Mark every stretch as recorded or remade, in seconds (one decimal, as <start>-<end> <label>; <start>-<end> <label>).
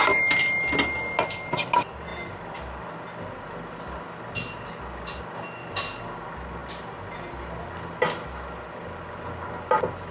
0.0-10.1 recorded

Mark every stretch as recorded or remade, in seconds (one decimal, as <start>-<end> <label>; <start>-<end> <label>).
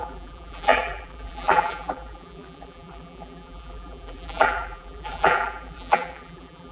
0.0-6.7 remade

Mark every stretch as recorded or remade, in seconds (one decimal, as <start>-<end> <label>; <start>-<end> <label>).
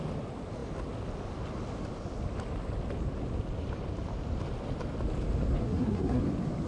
0.0-5.6 recorded; 5.6-6.2 remade; 6.2-6.7 recorded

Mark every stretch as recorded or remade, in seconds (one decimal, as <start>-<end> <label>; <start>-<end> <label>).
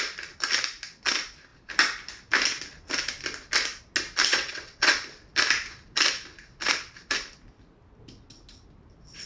0.0-4.3 recorded; 4.3-4.9 remade; 4.9-9.3 recorded